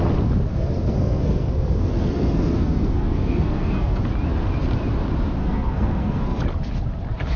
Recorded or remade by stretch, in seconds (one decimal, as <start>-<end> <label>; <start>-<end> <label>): 0.0-0.5 recorded; 0.5-4.0 remade; 4.0-5.4 recorded; 5.4-6.4 remade; 6.4-7.4 recorded